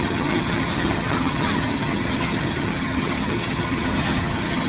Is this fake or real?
fake